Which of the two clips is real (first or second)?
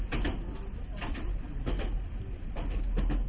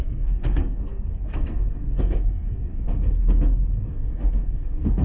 first